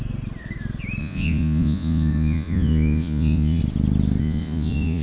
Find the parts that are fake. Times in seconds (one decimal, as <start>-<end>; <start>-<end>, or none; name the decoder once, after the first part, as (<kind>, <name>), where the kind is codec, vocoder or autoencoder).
1.0-3.6 (vocoder, Vocos); 4.2-5.0